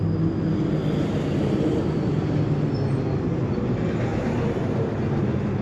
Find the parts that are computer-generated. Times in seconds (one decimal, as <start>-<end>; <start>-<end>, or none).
4.1-5.6

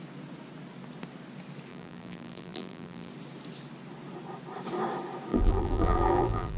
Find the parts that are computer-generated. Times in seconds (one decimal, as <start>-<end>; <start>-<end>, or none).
1.7-3.1; 5.3-6.6

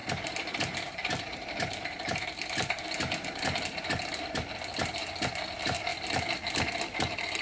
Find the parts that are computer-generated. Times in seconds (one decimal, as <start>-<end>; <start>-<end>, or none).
0.0-7.4

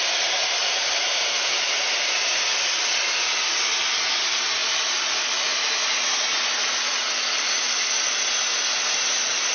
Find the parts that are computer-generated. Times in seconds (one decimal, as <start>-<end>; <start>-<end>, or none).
0.6-3.5

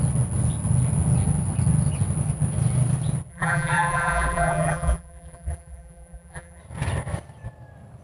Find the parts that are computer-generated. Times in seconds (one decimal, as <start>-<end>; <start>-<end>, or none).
3.3-6.6